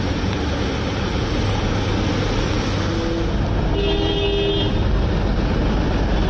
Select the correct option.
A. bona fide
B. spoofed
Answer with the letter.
A